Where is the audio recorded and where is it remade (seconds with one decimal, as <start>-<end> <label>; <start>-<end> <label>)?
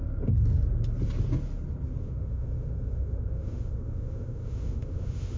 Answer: 0.0-2.0 recorded; 2.0-5.4 remade